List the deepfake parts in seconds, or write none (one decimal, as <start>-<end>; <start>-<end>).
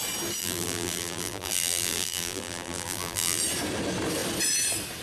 0.4-3.4